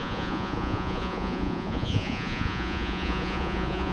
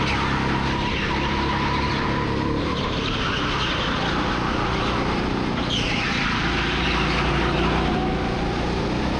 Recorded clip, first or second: second